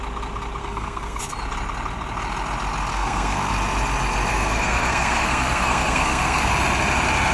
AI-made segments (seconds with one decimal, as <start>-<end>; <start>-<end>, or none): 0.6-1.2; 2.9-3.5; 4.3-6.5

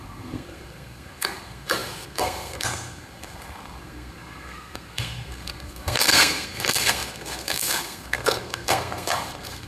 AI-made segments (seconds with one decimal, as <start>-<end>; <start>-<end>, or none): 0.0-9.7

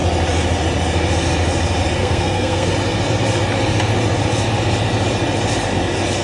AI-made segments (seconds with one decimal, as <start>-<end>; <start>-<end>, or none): 2.0-2.7

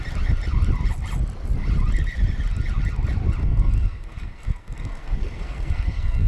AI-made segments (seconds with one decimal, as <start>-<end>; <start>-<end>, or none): 3.4-6.3

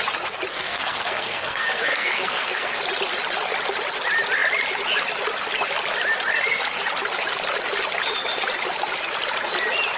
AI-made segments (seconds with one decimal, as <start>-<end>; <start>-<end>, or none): 0.5-2.8